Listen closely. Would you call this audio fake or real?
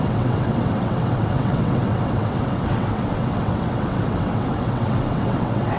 fake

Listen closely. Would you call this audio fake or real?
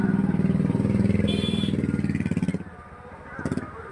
real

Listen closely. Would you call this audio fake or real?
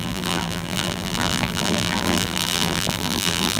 fake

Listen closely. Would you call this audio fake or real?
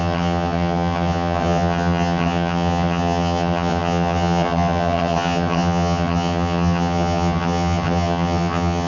fake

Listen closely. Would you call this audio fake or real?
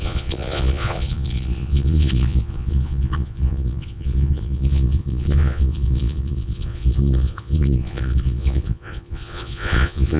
fake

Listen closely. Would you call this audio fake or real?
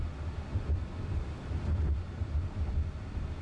real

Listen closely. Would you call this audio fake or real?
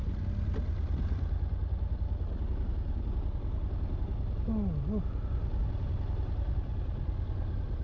real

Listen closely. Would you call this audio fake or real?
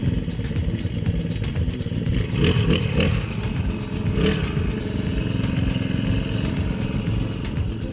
real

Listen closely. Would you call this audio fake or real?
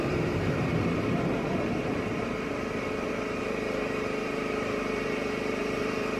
fake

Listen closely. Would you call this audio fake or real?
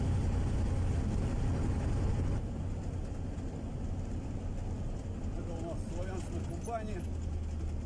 real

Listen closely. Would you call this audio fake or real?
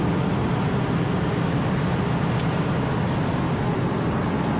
real